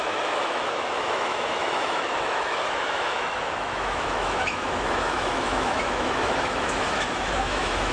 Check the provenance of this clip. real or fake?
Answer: fake